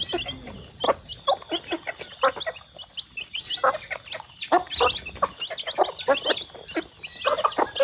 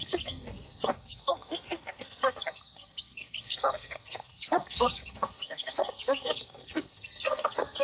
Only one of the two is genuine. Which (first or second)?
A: first